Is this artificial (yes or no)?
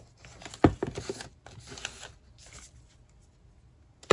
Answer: no